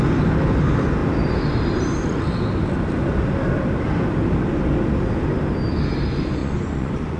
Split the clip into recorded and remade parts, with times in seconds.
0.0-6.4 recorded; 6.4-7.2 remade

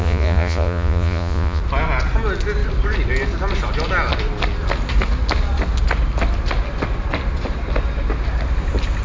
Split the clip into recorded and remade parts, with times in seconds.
0.0-1.6 remade; 1.6-9.0 recorded

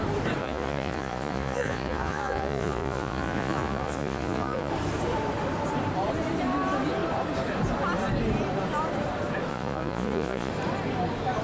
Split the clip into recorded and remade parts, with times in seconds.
0.0-0.4 recorded; 0.4-4.7 remade; 4.7-9.5 recorded; 9.5-10.5 remade; 10.5-11.4 recorded

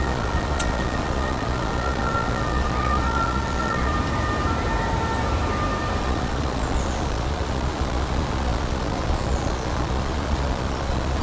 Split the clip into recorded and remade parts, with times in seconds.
0.0-3.9 remade; 3.9-6.0 recorded; 6.0-11.2 remade

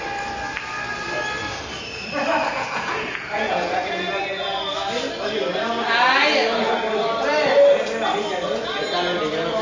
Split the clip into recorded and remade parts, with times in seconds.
0.0-2.5 recorded; 2.5-4.6 remade; 4.6-9.6 recorded

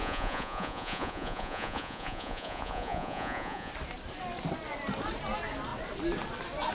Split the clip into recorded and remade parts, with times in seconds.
0.0-3.7 remade; 3.7-6.7 recorded

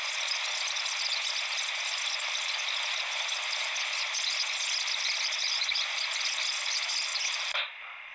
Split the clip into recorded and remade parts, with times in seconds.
0.0-8.1 recorded

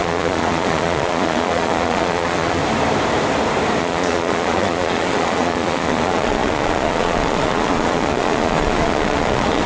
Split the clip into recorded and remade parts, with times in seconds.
0.0-2.6 remade; 2.6-3.8 recorded; 3.8-9.7 remade